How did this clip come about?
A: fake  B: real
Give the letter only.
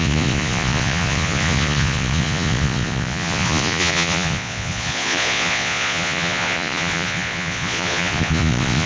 A